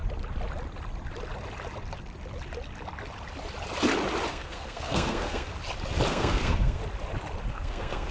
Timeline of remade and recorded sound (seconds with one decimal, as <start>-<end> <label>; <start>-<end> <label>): 0.0-4.3 recorded; 4.3-5.5 remade; 5.5-6.1 recorded; 6.1-6.8 remade; 6.8-7.5 recorded; 7.5-8.1 remade